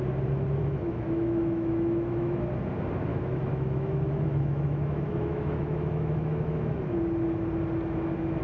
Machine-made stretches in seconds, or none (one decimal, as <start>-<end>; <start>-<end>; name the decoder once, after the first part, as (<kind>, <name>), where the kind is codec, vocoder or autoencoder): 0.6-2.4 (autoencoder, DAC-VAE); 3.1-7.0